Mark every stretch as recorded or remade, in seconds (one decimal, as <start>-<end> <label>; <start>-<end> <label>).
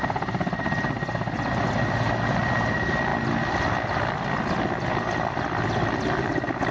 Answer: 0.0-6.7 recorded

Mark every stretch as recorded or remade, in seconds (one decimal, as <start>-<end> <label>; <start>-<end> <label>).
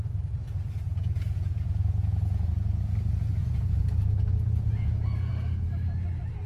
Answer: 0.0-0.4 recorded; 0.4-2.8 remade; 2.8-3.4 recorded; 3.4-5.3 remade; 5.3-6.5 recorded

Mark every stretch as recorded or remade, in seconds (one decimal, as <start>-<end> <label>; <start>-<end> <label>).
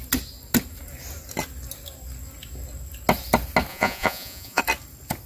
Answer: 0.0-3.7 recorded; 3.7-4.6 remade; 4.6-5.3 recorded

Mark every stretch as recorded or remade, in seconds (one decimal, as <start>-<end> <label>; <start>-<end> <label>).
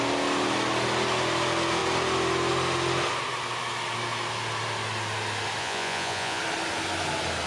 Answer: 0.0-5.6 recorded; 5.6-6.4 remade; 6.4-7.5 recorded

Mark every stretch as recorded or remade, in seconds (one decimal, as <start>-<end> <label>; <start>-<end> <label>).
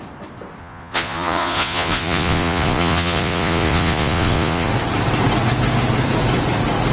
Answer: 0.0-0.6 recorded; 0.6-4.7 remade; 4.7-6.9 recorded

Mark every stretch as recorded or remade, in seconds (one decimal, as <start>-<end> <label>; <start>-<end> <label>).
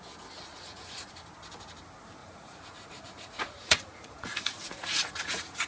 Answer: 0.0-0.5 recorded; 0.5-1.1 remade; 1.1-2.2 recorded; 2.2-5.7 remade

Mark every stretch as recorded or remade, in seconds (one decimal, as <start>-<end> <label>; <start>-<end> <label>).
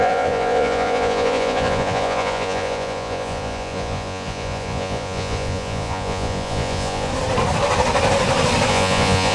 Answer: 0.0-7.1 remade; 7.1-8.7 recorded; 8.7-9.3 remade